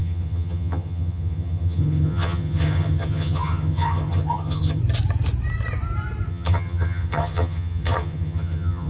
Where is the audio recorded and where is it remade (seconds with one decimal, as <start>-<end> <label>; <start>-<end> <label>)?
0.0-4.8 remade; 4.8-6.3 recorded; 6.3-8.9 remade